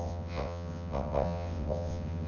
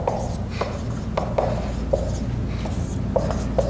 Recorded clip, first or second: second